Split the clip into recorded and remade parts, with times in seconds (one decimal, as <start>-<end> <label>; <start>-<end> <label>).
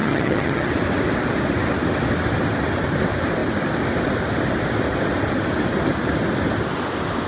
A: 0.0-0.7 remade; 0.7-7.3 recorded